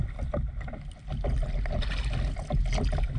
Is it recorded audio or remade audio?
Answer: recorded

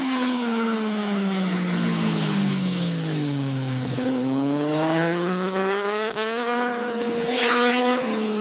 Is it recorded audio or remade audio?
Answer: remade